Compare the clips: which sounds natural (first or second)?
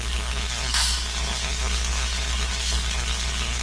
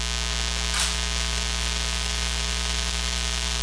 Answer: second